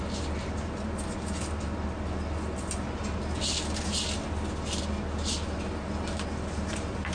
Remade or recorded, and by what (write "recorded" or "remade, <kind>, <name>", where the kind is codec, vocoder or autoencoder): recorded